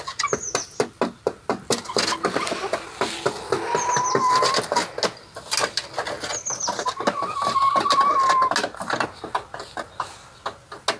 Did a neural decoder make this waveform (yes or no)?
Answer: no